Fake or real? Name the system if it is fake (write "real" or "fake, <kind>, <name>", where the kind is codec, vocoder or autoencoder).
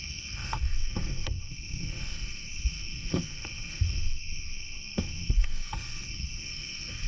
fake, codec, SNAC